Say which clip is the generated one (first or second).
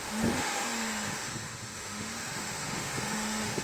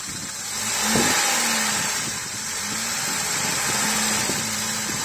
first